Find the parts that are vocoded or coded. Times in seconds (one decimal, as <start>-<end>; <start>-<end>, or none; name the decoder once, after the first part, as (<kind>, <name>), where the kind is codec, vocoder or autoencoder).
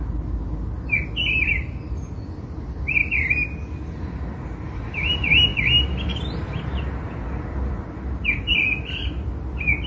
none